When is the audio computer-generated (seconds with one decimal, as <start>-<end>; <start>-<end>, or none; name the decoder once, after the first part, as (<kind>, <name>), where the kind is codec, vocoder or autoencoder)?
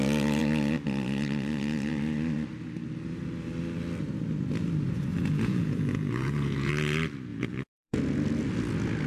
5.1-6.7 (vocoder, Vocos); 7.3-8.0